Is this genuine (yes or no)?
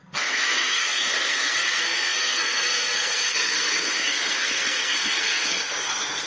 no